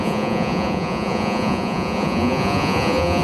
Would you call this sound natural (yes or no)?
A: no